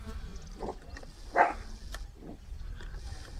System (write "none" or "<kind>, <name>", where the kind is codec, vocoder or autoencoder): none